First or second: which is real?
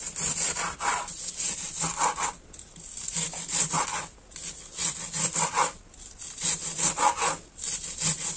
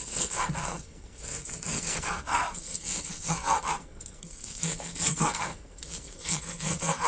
first